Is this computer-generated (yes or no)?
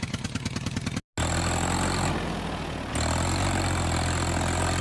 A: no